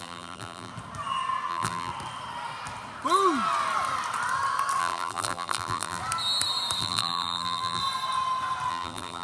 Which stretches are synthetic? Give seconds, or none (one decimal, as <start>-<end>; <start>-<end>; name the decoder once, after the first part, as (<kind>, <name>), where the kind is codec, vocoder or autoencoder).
0.0-0.7 (vocoder, BigVGAN v2); 1.5-1.9; 4.8-6.0; 6.8-7.8; 8.7-9.2